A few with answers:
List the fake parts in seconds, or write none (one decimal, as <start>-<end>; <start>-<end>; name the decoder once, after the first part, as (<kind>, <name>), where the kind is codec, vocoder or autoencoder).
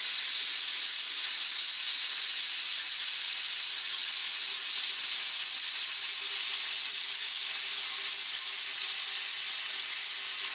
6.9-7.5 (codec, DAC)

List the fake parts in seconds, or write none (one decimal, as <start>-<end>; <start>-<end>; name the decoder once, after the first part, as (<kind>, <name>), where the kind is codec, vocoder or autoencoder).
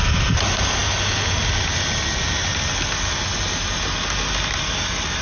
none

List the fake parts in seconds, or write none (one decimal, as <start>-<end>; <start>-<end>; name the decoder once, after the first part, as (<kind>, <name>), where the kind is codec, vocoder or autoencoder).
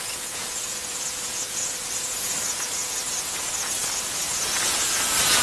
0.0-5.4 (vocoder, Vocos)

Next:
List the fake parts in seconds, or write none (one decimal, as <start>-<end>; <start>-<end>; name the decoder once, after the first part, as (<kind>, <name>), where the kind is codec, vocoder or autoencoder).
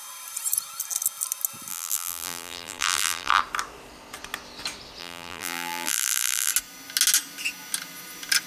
1.7-3.4 (vocoder, BigVGAN v2); 5.0-6.5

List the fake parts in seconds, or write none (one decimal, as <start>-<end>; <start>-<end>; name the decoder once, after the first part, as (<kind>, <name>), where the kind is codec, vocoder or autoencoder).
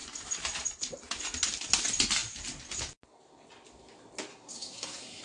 4.3-5.2 (codec, SNAC)